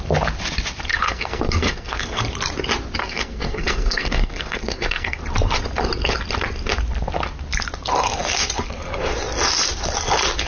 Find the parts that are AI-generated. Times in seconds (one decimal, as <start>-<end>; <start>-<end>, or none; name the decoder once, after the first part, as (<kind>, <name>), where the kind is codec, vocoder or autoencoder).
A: 0.9-2.2 (codec, SNAC); 3.0-5.2